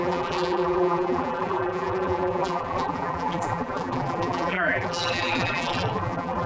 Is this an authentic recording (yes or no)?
no